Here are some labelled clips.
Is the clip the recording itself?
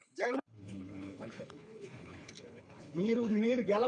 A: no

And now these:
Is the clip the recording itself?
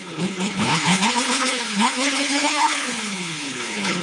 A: no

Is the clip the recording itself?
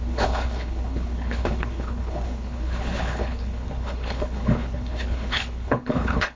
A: no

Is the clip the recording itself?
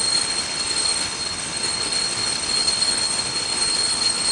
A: no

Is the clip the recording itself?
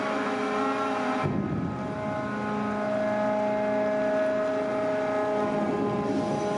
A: yes